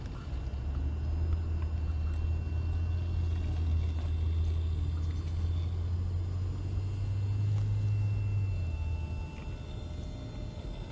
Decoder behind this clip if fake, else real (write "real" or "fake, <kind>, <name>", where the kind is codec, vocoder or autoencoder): real